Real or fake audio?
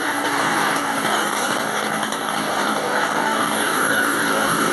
fake